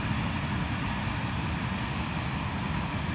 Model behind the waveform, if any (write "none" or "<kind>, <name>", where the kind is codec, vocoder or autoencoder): none